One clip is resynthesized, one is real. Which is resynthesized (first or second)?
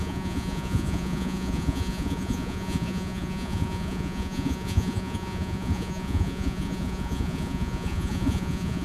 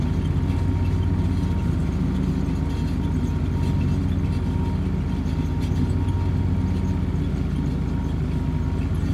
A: first